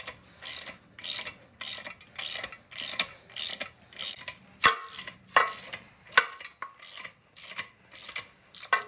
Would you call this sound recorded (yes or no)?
yes